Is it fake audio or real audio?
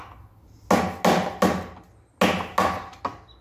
real